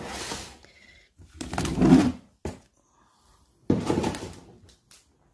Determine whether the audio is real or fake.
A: real